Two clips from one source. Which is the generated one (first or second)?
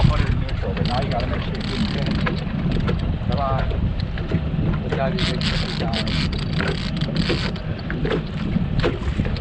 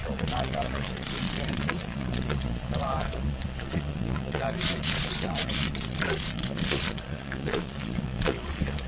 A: second